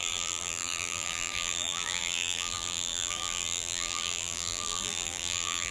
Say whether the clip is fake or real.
fake